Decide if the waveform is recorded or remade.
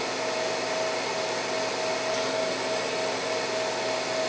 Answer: recorded